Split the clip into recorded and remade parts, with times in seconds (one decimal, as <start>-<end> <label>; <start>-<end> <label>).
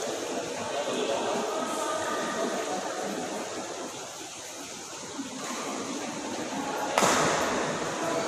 0.0-8.3 recorded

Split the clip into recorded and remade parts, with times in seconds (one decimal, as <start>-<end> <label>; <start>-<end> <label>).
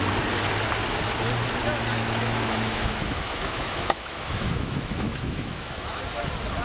0.0-2.0 recorded; 2.0-6.0 remade; 6.0-6.6 recorded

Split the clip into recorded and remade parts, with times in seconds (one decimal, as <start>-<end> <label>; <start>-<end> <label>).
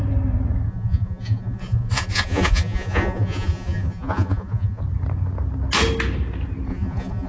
0.0-0.7 recorded; 0.7-4.8 remade; 4.8-6.7 recorded; 6.7-7.3 remade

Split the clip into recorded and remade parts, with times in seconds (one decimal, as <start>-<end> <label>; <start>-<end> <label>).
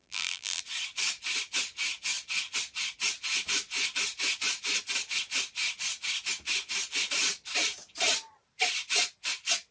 0.0-0.6 remade; 0.6-9.7 recorded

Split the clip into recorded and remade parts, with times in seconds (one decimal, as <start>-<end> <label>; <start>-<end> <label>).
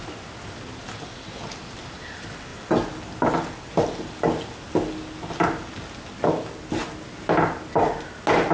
0.0-8.5 recorded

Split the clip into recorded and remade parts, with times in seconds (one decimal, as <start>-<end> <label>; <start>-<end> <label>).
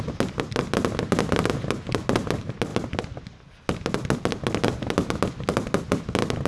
0.0-6.5 recorded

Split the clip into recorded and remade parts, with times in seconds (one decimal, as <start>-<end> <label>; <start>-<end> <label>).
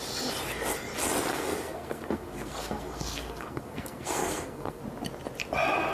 0.0-1.3 recorded; 1.3-4.8 remade; 4.8-5.9 recorded